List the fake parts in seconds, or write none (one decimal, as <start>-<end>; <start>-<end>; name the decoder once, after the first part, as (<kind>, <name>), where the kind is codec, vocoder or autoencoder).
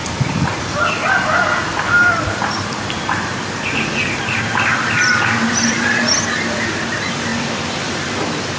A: none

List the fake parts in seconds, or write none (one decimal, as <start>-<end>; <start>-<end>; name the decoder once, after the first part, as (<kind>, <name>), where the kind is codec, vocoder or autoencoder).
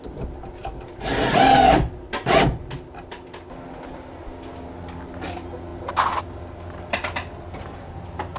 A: none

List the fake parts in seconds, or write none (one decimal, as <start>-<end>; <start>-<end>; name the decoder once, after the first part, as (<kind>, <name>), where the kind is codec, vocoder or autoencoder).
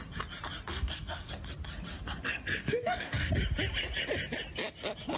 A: 0.7-1.3 (codec, DAC); 2.6-3.3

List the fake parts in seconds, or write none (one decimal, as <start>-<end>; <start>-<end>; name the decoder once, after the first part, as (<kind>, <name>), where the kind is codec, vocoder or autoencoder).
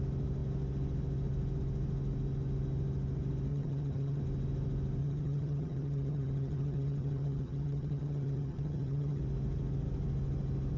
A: 3.5-4.2 (vocoder, HiFi-GAN); 5.0-9.2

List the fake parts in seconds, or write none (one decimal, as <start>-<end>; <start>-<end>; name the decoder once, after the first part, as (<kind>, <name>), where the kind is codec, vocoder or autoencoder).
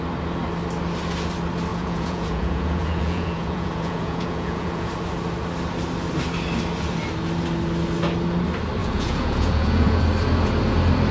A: 1.7-4.9 (vocoder, Vocos); 8.8-10.0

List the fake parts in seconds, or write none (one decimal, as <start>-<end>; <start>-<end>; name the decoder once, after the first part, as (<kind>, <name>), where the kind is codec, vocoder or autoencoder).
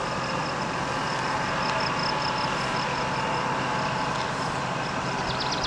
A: none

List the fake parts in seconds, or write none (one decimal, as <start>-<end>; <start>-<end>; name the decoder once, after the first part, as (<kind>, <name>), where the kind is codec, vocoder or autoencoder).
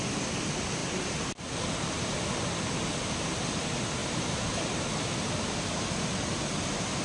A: 0.8-2.2 (vocoder, BigVGAN v2); 4.0-5.7